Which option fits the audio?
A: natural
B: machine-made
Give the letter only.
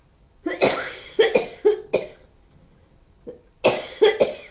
A